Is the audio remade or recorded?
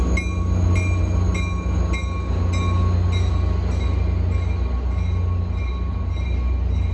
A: recorded